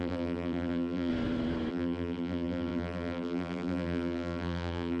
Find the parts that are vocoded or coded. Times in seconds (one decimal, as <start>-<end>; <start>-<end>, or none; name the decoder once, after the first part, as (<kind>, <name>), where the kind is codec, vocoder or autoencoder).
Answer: 0.0-1.1 (vocoder, BigVGAN v2); 1.7-5.0